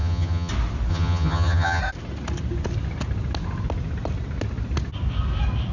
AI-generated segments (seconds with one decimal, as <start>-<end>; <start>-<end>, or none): 0.0-0.5; 0.9-1.8